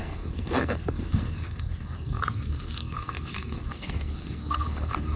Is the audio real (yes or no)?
no